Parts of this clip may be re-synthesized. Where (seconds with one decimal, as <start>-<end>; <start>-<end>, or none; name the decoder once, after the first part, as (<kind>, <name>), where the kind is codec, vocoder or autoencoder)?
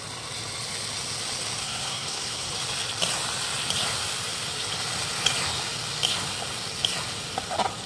1.6-2.5 (codec, SNAC)